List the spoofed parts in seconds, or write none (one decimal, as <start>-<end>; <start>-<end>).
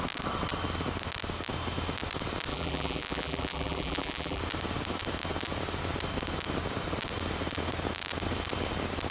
2.5-4.4